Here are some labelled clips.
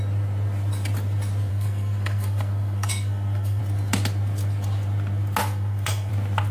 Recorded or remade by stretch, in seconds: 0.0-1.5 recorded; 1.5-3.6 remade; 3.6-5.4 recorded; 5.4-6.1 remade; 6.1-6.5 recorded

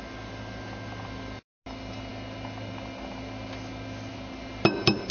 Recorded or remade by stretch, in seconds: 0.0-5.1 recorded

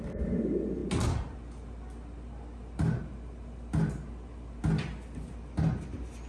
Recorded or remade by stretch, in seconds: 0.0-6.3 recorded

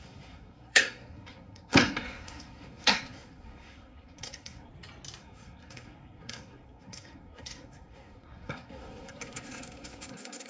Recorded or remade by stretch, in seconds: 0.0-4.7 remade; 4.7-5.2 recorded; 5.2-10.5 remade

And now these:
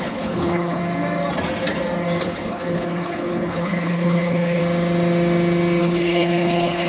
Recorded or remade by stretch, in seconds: 0.0-0.8 remade; 0.8-2.2 recorded; 2.2-4.6 remade; 4.6-5.8 recorded; 5.8-6.9 remade

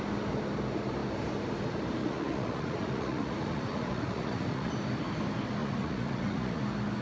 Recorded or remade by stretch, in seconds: 0.0-2.0 recorded; 2.0-4.7 remade; 4.7-5.6 recorded; 5.6-6.6 remade; 6.6-7.0 recorded

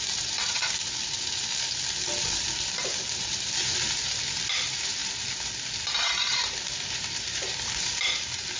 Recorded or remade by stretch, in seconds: 0.0-5.0 remade; 5.0-5.9 recorded; 5.9-8.6 remade

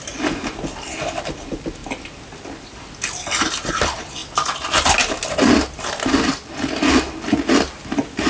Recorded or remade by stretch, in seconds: 0.0-8.3 recorded